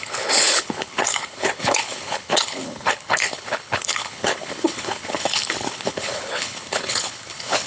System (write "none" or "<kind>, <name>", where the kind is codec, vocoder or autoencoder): codec, HILCodec